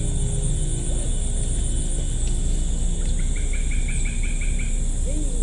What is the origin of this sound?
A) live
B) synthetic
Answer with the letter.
A